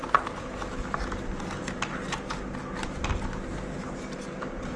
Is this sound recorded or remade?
recorded